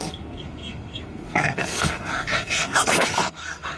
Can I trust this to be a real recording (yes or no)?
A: no